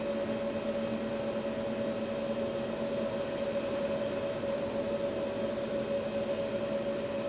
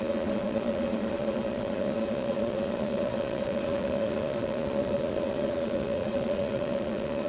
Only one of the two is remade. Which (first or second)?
second